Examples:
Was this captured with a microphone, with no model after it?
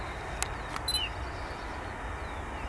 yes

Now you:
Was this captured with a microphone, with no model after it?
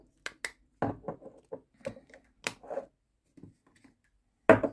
yes